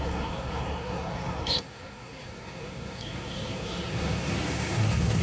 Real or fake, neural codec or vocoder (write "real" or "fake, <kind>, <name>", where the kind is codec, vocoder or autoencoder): fake, codec, SNAC